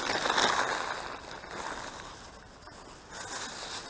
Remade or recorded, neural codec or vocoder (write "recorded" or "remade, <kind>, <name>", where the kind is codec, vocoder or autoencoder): recorded